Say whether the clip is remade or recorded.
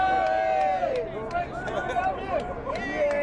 recorded